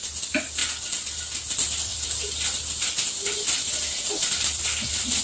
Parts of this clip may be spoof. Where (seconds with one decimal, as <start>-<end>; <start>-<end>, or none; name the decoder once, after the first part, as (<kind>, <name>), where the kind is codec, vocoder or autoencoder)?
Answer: 0.0-0.6 (vocoder, BigVGAN v2); 1.5-5.2